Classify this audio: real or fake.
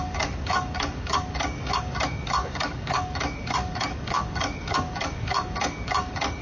fake